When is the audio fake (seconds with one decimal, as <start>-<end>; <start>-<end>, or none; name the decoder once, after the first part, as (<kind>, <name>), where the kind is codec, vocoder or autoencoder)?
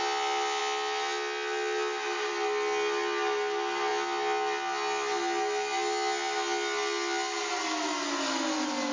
none